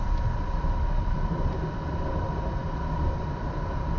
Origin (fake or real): real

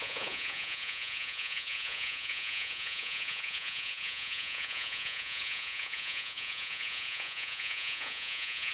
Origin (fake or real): fake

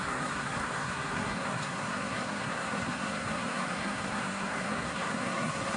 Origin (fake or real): fake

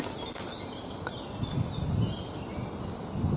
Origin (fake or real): real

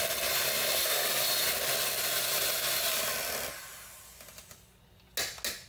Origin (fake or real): real